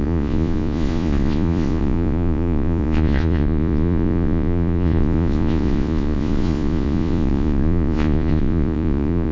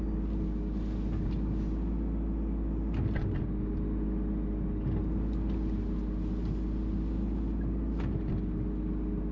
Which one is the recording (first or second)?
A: second